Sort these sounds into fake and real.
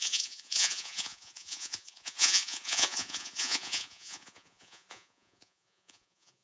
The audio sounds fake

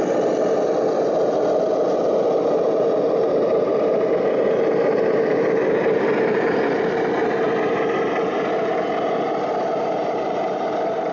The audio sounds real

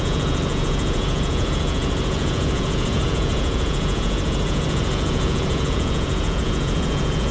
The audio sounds fake